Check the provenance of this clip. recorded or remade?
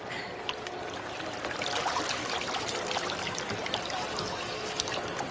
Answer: recorded